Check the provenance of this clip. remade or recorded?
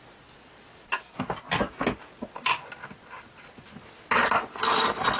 recorded